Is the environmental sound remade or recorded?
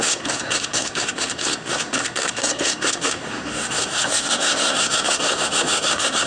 remade